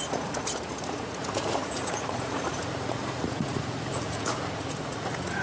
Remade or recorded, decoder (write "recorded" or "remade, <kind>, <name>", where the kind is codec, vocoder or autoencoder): remade, vocoder, Vocos